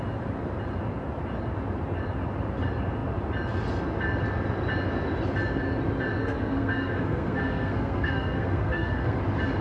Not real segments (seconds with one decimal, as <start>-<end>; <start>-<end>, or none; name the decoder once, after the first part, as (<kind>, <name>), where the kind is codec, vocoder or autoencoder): 6.2-9.2 (codec, SNAC)